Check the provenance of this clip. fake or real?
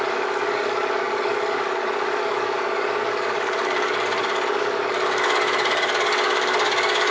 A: fake